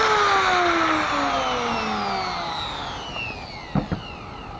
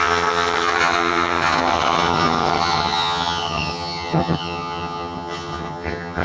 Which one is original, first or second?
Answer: first